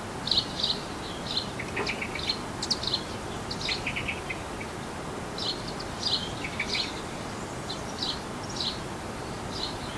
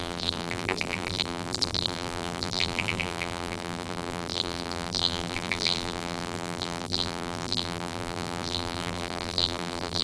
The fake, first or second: second